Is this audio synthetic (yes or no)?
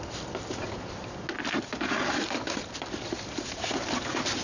no